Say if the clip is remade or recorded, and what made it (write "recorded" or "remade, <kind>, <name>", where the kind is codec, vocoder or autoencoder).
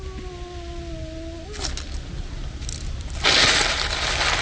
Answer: recorded